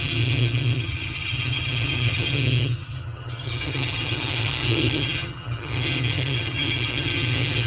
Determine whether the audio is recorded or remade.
remade